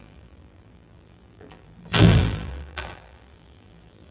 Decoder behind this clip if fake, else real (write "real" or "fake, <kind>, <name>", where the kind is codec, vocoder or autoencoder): fake, vocoder, BigVGAN v2